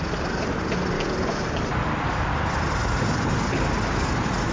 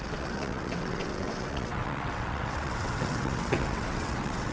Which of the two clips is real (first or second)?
first